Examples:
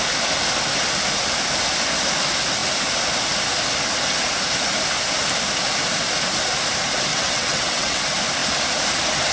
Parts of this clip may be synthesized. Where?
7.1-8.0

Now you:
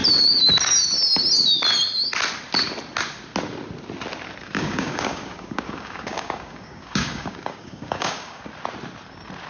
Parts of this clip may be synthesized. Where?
4.4-8.5

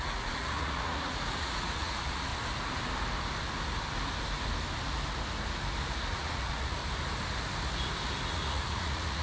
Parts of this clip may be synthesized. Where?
0.0-2.3; 6.1-6.8; 8.3-9.2